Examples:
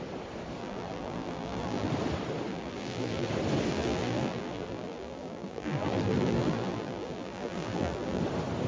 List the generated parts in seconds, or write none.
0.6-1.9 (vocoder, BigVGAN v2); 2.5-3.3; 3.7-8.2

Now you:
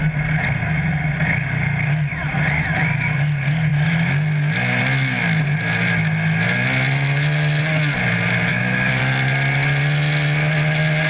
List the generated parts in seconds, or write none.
8.5-9.0 (codec, DAC)

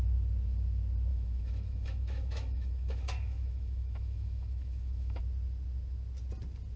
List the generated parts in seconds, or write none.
1.1-5.2 (autoencoder, DAC-VAE)

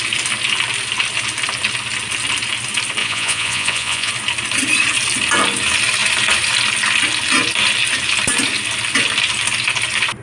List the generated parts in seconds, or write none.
3.0-4.1 (vocoder, Vocos)

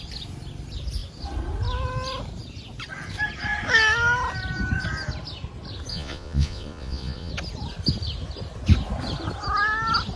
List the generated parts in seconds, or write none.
5.9-7.3 (vocoder, Vocos)